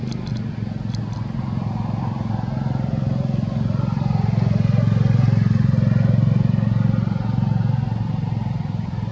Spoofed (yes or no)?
no